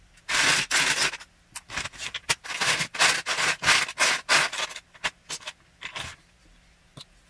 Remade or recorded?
recorded